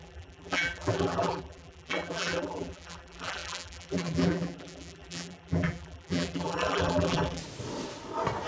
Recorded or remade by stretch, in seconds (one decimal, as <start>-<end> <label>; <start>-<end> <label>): 0.0-7.4 remade; 7.4-8.5 recorded